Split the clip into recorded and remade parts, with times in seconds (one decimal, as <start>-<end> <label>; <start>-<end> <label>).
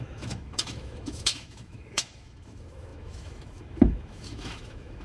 0.0-5.0 remade